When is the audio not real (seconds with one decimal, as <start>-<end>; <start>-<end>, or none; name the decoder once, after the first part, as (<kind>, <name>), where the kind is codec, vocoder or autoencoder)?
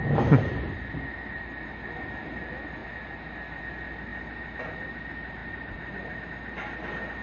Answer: none